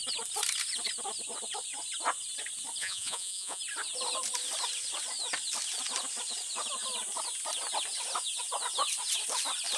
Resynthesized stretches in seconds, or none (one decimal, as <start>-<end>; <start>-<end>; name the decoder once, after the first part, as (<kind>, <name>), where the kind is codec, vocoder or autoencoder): 2.8-3.6 (vocoder, Vocos)